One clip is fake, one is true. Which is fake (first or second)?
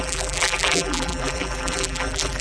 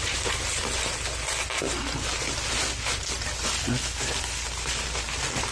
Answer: first